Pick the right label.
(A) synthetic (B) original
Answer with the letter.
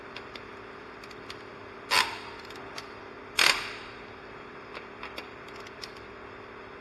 B